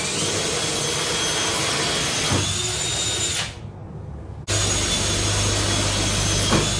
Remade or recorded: recorded